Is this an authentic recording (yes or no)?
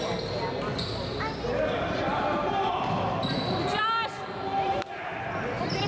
yes